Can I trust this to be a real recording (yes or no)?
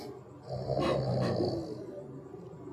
yes